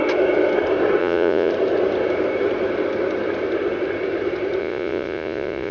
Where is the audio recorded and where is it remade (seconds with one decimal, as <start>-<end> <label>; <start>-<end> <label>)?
0.0-1.0 recorded; 1.0-1.5 remade; 1.5-4.6 recorded; 4.6-5.7 remade